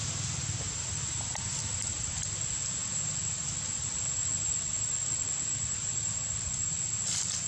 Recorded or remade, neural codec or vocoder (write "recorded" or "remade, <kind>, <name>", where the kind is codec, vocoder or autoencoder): recorded